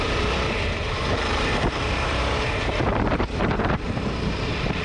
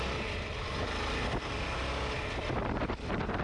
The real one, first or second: second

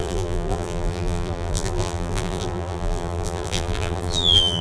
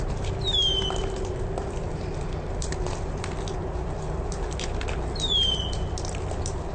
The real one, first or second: second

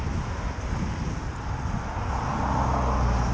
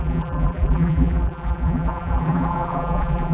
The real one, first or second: first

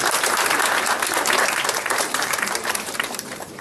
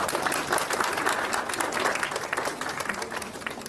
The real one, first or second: second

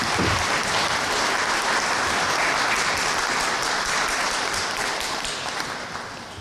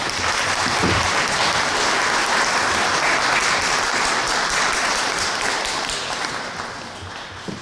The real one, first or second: second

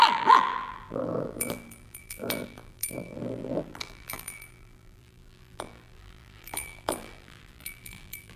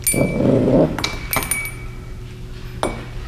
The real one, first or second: second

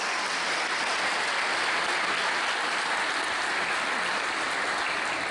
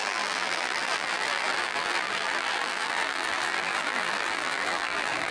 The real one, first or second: first